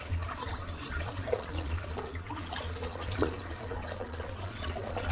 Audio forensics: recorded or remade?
remade